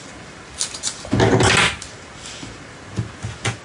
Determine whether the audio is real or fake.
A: real